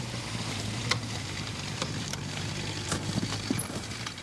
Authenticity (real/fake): fake